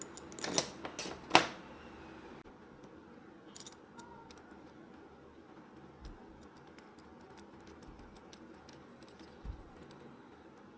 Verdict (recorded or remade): recorded